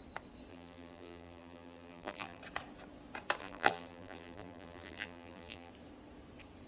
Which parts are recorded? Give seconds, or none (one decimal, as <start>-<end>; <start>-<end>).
0.0-0.5; 2.4-3.4; 5.7-6.7